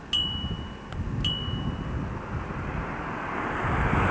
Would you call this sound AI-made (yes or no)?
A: no